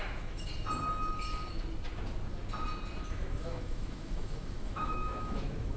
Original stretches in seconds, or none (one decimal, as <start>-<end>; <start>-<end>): 0.5-3.1